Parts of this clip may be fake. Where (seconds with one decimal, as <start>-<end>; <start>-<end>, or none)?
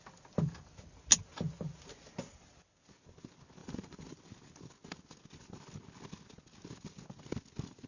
3.6-4.2